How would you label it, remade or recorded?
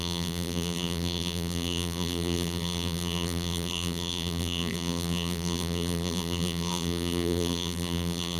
remade